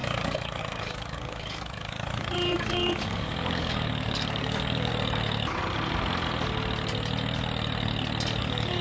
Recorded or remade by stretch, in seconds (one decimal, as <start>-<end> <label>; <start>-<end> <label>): 0.0-4.9 remade; 4.9-8.4 recorded; 8.4-8.8 remade